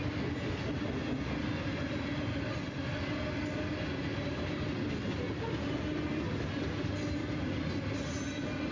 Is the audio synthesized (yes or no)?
no